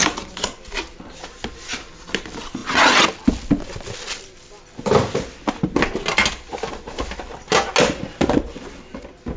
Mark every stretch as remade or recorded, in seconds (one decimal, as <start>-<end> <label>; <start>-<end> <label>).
0.0-9.4 recorded